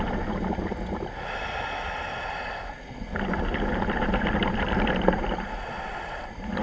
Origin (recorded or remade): recorded